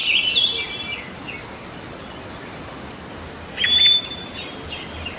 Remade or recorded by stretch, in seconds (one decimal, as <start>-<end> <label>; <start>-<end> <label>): 0.0-3.5 recorded; 3.5-5.2 remade